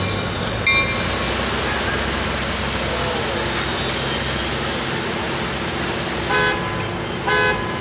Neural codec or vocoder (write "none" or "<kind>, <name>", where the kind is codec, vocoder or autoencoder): none